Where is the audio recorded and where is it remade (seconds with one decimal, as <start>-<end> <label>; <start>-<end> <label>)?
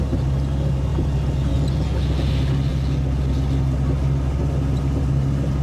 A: 0.0-5.6 recorded